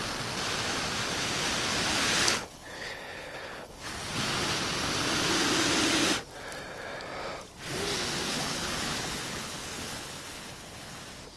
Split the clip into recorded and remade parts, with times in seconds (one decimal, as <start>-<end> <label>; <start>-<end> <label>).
0.0-1.9 recorded; 1.9-3.9 remade; 3.9-8.2 recorded; 8.2-11.0 remade; 11.0-11.4 recorded